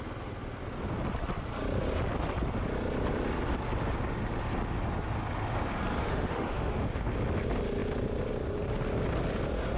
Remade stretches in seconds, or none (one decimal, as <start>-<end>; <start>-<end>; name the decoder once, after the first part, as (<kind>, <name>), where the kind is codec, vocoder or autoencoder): 6.0-7.0 (autoencoder, DAC-VAE)